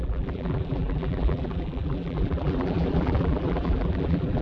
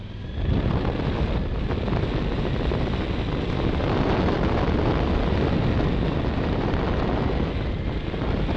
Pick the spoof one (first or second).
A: first